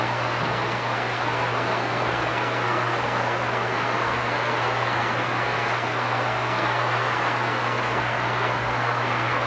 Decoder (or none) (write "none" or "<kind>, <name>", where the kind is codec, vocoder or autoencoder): codec, SNAC